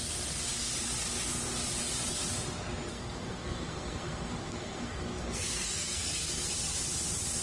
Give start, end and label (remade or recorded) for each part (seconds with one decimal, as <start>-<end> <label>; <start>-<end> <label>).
0.0-2.9 recorded; 2.9-6.5 remade; 6.5-7.4 recorded